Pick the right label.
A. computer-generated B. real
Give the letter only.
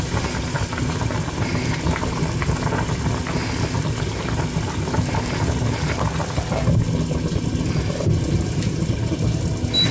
B